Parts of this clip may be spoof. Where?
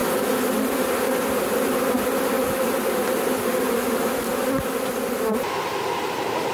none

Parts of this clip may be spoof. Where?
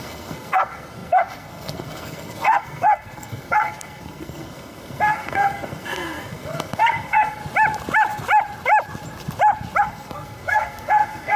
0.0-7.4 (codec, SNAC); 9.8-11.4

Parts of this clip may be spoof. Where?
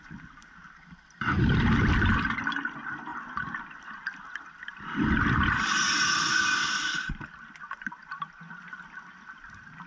none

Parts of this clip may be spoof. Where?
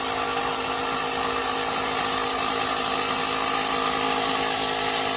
none